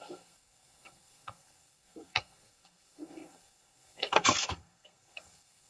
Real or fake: fake